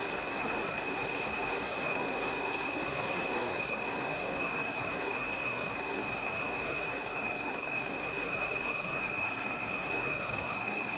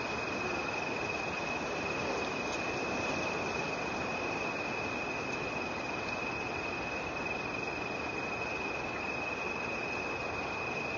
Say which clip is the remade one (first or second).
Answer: first